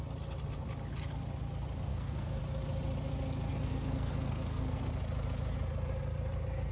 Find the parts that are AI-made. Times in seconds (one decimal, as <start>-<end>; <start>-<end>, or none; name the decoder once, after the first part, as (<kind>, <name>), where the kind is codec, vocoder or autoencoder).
1.9-2.4 (codec, SNAC); 3.5-4.9